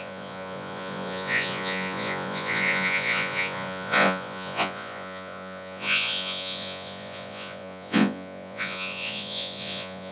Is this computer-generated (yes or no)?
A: yes